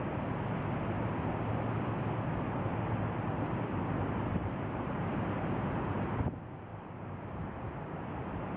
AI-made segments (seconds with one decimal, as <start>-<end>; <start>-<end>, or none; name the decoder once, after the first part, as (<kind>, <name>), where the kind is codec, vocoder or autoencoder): 4.3-6.2 (vocoder, BigVGAN v2); 6.7-8.1